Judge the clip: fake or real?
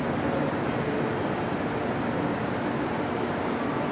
real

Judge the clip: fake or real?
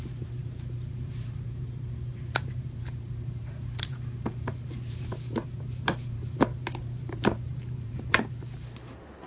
fake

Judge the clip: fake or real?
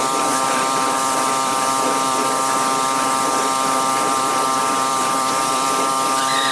fake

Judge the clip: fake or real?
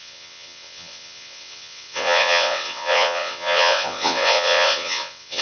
fake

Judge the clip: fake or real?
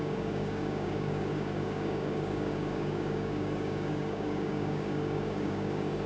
fake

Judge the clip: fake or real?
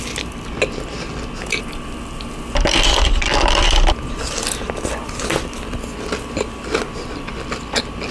real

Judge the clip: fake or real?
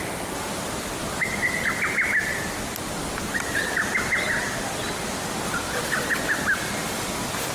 real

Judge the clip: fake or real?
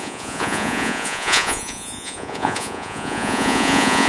fake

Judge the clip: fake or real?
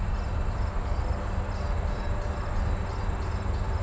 real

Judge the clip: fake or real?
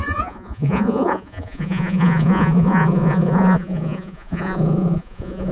fake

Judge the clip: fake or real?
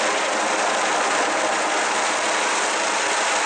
real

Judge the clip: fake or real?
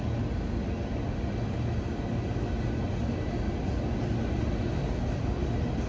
real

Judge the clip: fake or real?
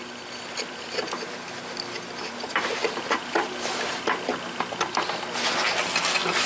real